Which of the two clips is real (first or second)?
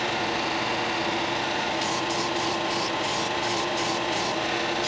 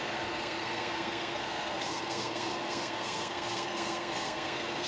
first